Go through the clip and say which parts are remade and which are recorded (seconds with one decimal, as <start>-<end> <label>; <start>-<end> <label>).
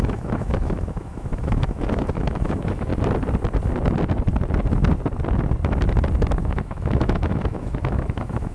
0.0-2.9 remade; 2.9-6.4 recorded; 6.4-8.5 remade